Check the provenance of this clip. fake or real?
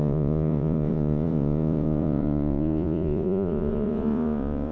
fake